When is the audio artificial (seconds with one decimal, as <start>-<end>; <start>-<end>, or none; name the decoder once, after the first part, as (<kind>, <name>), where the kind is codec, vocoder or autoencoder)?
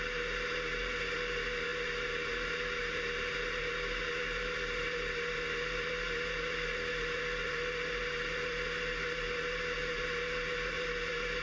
0.0-11.4 (vocoder, BigVGAN v2)